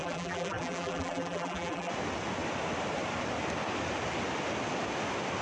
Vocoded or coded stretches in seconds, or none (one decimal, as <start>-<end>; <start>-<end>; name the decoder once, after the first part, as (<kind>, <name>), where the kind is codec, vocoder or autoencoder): 0.0-1.9 (vocoder, BigVGAN v2)